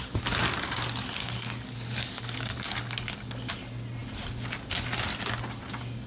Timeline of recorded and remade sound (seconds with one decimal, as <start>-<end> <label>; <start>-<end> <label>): 0.0-1.2 recorded; 1.2-3.5 remade; 3.5-6.1 recorded